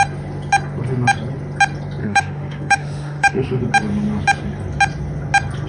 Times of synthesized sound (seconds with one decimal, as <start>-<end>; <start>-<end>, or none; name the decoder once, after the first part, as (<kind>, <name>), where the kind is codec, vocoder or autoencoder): 2.0-3.6 (autoencoder, DAC-VAE)